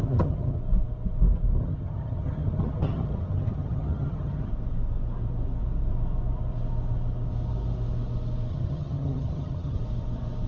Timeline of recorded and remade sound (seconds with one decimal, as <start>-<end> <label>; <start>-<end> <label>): 0.0-0.6 remade; 0.6-1.6 recorded; 1.6-4.5 remade; 4.5-8.5 recorded; 8.5-9.8 remade; 9.8-10.5 recorded